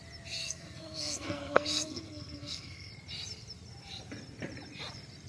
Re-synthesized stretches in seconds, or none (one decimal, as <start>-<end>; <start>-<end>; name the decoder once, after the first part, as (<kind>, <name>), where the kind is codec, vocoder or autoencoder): 0.4-2.9 (codec, SNAC)